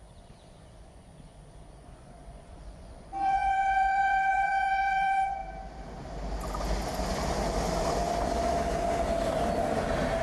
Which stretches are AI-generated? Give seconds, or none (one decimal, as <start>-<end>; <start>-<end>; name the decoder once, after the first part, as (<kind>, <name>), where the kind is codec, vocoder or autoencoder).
0.0-5.4 (vocoder, Vocos)